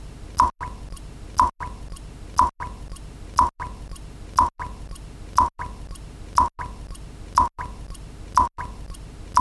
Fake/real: real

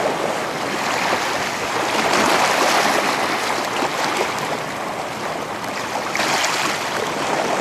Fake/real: real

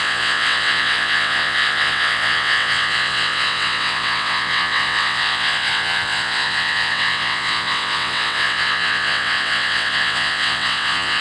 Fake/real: fake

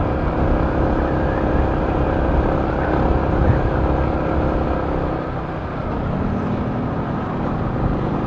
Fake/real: real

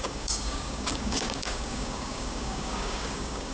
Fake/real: fake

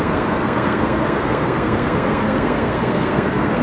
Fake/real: fake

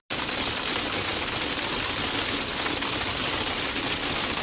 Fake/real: real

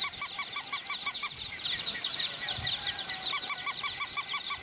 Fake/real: real